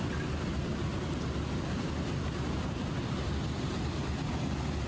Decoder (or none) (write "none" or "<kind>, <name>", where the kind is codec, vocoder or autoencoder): none